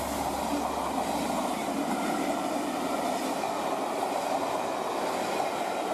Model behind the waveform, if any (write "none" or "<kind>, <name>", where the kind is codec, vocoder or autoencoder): none